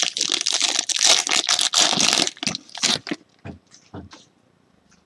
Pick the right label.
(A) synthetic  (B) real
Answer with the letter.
B